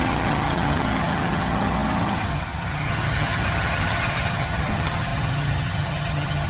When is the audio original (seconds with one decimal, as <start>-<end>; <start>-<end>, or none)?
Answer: none

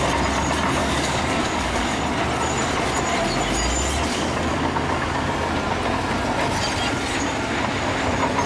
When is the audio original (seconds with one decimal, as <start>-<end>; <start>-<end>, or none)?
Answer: 0.0-0.8; 2.0-4.1; 5.3-8.5

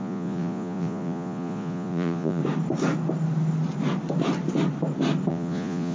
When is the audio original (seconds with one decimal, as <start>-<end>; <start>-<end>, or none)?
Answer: 2.4-5.3

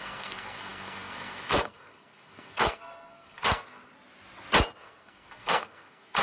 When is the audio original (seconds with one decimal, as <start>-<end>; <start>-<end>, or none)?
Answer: 3.9-4.8

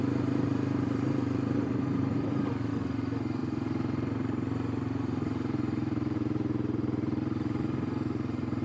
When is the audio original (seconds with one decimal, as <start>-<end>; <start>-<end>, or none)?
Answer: 2.7-3.4

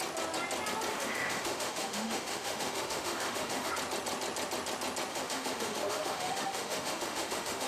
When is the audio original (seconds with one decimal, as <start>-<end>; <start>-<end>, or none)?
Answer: 0.0-0.9; 3.7-5.1

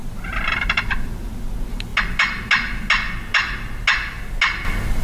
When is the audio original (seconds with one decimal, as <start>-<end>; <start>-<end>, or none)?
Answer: 0.0-5.0

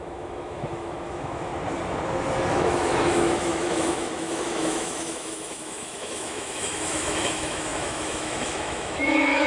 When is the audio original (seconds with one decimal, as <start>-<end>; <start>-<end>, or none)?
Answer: 1.5-2.5